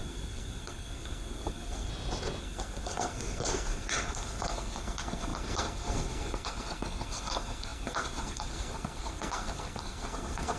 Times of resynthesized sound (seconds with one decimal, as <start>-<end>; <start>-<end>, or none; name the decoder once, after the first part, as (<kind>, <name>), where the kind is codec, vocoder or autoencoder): 0.0-1.9 (codec, SNAC); 2.4-10.6